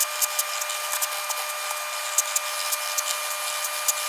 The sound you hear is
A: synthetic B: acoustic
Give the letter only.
B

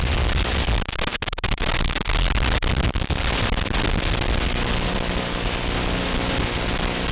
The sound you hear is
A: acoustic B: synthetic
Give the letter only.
A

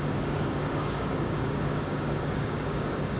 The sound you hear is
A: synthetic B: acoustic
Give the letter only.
A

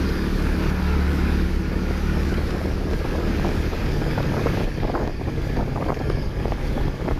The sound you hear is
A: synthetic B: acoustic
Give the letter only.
A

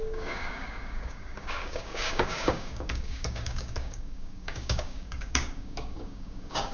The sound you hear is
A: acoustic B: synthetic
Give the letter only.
B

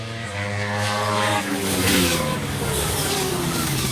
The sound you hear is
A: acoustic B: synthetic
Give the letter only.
B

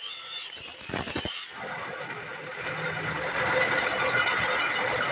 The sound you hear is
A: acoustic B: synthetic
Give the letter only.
A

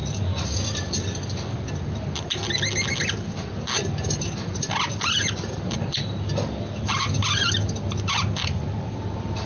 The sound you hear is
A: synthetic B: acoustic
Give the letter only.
B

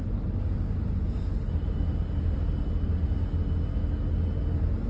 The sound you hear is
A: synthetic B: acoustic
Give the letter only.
B